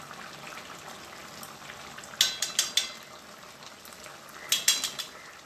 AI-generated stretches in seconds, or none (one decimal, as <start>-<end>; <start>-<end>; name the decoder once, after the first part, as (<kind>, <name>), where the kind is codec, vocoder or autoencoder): none